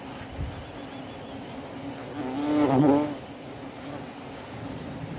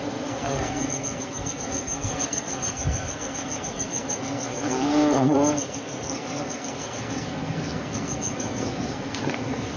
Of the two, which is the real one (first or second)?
first